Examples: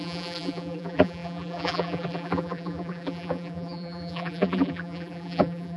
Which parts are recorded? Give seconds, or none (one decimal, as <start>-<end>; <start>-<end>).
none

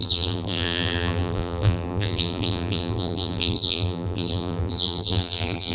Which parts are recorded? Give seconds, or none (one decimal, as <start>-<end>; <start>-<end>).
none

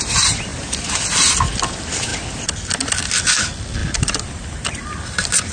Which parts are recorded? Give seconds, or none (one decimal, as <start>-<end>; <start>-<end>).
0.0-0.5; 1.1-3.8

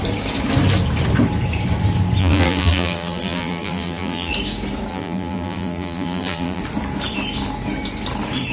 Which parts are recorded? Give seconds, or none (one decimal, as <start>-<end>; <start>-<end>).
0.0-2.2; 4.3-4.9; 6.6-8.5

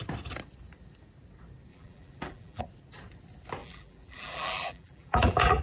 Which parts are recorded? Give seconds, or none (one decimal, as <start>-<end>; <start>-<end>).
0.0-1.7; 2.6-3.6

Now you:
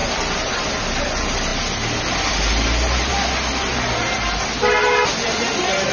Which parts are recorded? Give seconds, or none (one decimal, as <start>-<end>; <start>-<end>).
1.0-5.9